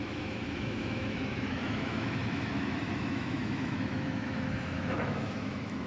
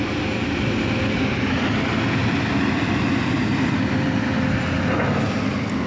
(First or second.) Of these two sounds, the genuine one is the second